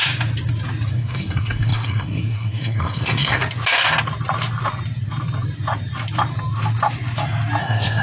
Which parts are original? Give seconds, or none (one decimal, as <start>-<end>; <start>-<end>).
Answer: 0.0-0.9; 3.4-7.6